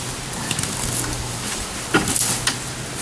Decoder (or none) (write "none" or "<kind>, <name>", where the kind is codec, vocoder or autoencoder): none